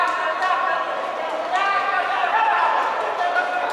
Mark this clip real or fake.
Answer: real